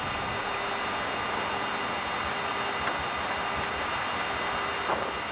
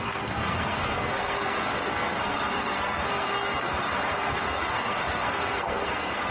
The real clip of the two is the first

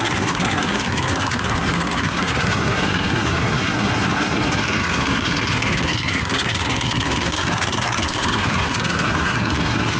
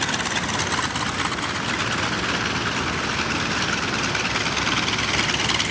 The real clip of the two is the second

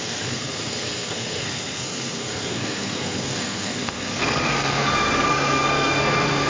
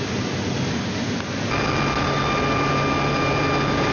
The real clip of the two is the second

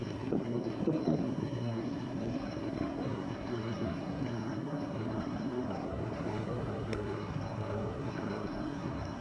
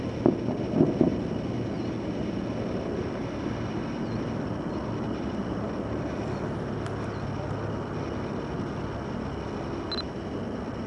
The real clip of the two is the second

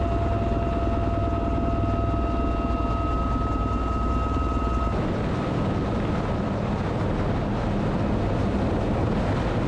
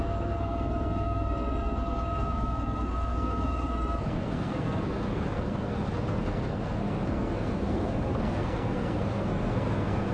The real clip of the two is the first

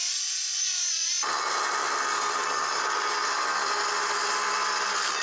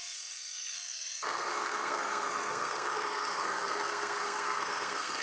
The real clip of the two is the first